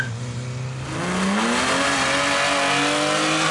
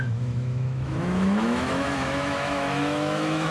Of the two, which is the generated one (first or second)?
second